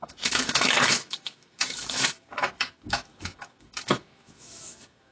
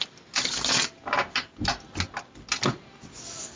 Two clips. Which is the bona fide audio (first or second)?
second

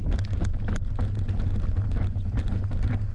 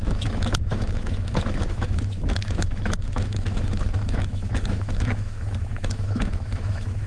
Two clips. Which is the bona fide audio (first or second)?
first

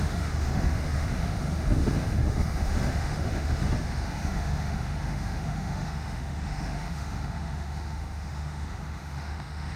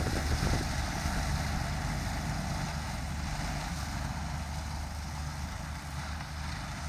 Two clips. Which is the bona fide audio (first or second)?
second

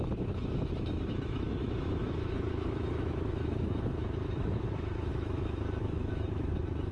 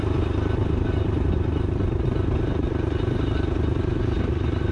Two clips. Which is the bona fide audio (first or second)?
second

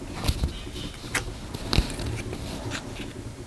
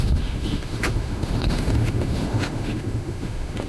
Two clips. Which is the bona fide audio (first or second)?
first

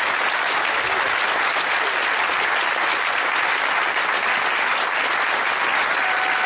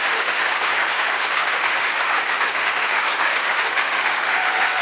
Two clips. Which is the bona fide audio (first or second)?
first